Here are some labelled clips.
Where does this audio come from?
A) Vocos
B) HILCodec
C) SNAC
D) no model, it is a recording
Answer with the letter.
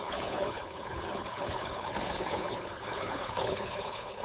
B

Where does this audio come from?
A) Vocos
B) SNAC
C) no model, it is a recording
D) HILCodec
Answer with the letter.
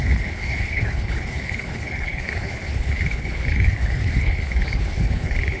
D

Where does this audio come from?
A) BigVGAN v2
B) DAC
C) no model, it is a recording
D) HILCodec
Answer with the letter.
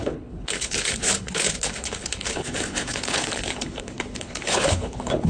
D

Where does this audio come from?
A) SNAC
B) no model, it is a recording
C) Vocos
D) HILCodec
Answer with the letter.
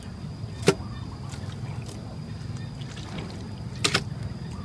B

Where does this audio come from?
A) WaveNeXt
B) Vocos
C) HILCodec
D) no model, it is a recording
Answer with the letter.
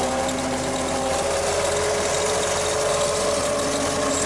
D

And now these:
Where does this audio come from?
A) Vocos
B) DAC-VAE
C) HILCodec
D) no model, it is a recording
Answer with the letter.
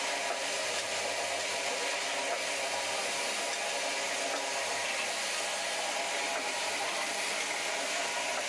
D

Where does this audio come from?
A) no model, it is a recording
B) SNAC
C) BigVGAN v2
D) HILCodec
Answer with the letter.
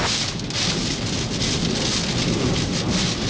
A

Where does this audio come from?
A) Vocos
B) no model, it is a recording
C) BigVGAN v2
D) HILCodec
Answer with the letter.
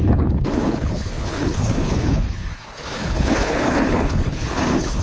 D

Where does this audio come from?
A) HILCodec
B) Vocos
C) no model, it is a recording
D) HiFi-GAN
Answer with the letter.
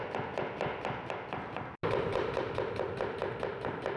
C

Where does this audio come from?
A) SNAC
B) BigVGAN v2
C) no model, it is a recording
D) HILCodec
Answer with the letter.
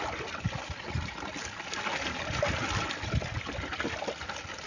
C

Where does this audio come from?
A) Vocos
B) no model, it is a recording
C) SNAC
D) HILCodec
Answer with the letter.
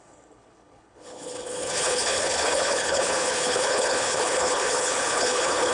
D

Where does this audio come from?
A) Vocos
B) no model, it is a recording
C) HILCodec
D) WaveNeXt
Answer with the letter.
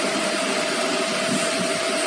B